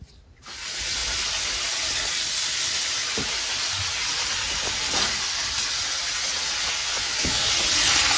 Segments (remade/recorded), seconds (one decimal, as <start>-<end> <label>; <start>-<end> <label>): 0.0-6.8 recorded; 6.8-7.5 remade; 7.5-8.2 recorded

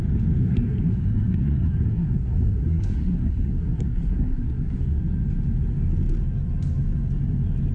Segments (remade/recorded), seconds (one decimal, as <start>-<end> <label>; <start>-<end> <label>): 0.0-0.4 recorded; 0.4-5.0 remade; 5.0-7.7 recorded

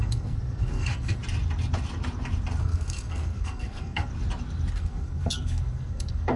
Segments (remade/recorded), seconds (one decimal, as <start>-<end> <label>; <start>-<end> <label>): 0.0-1.2 remade; 1.2-2.6 recorded; 2.6-4.1 remade; 4.1-4.7 recorded; 4.7-6.4 remade

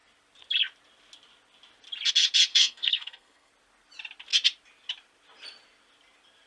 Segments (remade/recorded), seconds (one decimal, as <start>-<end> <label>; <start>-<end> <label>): 0.0-2.5 recorded; 2.5-3.5 remade; 3.5-6.5 recorded

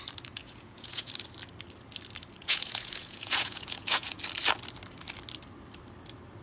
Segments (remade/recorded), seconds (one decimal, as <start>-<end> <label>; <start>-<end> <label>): 0.0-0.4 recorded; 0.4-1.1 remade; 1.1-2.4 recorded; 2.4-4.2 remade; 4.2-6.4 recorded

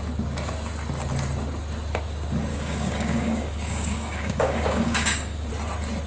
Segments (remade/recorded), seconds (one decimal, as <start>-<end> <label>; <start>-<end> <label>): 0.0-2.5 recorded; 2.5-5.5 remade; 5.5-6.1 recorded